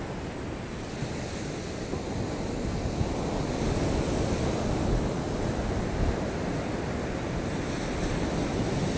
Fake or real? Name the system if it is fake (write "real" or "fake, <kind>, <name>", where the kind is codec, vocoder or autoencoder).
real